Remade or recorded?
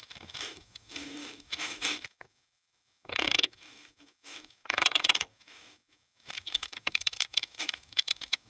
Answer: remade